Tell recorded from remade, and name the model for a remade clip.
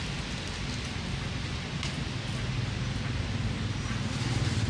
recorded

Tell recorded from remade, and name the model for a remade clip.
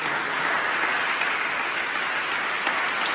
recorded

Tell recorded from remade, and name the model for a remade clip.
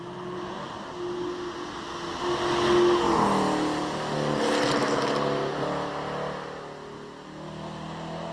recorded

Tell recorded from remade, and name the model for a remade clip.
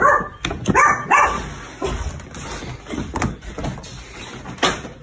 recorded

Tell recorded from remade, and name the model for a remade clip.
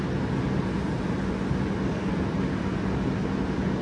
recorded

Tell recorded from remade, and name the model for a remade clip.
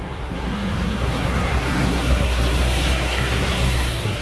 remade, codec, SNAC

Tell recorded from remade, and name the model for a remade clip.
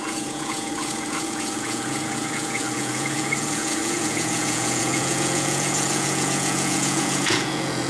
remade, vocoder, Vocos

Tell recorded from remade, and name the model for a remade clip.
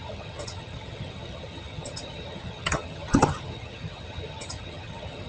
remade, vocoder, HiFi-GAN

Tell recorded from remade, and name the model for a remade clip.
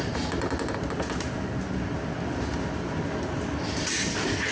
recorded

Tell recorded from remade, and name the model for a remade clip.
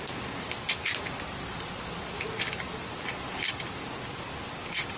recorded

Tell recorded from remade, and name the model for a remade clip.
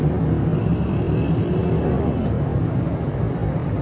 recorded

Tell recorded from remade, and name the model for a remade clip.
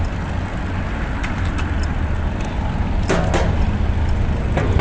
recorded